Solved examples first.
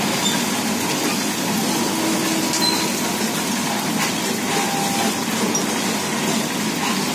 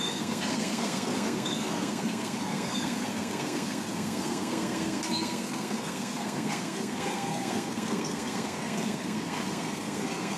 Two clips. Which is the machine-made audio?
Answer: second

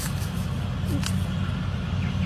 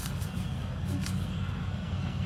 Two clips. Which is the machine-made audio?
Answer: second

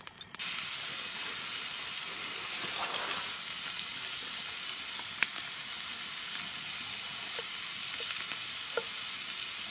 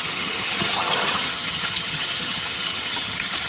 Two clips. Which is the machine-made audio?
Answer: second